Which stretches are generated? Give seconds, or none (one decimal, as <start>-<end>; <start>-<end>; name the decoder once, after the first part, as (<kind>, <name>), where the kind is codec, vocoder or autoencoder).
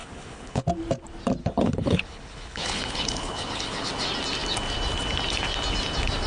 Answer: 0.0-0.6 (codec, HILCodec); 1.4-3.9